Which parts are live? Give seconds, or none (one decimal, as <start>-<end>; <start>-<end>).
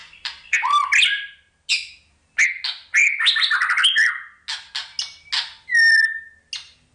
1.4-6.9